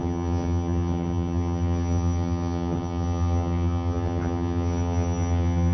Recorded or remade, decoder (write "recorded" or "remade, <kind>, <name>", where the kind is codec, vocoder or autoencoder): remade, vocoder, HiFi-GAN